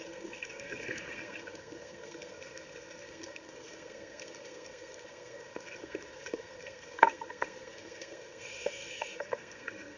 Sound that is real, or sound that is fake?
fake